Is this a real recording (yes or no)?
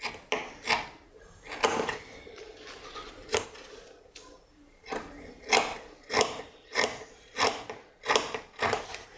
yes